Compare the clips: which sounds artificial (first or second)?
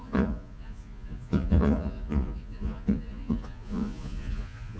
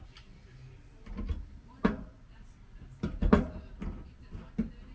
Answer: first